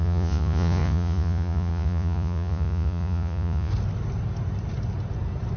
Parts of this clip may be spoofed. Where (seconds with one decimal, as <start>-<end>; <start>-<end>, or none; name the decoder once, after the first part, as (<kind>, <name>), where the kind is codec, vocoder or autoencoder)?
0.0-3.7 (vocoder, Vocos)